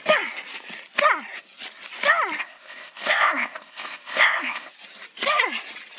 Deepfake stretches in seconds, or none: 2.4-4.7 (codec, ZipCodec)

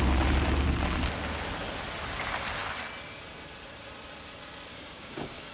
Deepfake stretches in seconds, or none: 4.7-5.5 (codec, DAC)